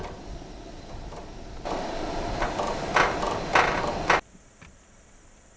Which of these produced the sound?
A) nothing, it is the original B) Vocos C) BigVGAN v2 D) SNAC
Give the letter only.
A